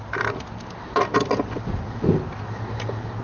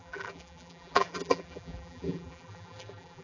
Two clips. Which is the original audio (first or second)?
first